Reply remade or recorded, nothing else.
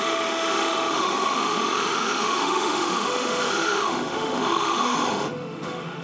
remade